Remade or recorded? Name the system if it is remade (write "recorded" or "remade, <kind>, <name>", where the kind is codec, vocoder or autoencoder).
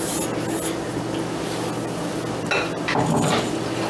recorded